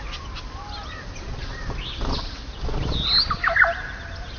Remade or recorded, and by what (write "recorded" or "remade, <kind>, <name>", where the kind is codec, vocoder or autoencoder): recorded